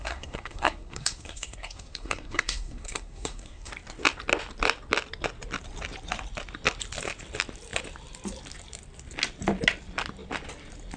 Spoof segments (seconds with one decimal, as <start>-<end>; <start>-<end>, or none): 0.0-3.7